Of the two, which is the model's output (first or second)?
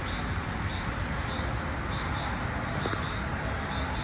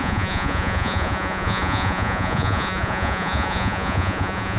second